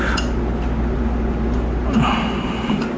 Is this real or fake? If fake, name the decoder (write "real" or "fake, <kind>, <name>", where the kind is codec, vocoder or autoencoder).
real